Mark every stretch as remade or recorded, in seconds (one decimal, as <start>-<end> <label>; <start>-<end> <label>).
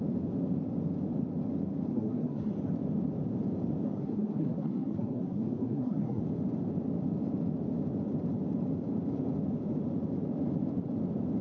0.0-1.9 recorded; 1.9-2.5 remade; 2.5-3.8 recorded; 3.8-6.2 remade; 6.2-11.4 recorded